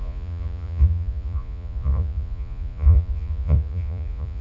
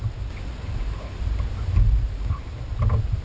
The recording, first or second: second